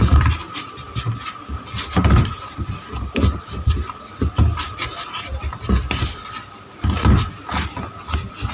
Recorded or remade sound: recorded